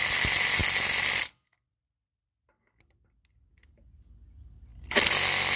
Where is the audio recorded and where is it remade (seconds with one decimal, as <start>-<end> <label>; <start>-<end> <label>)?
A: 0.0-5.6 recorded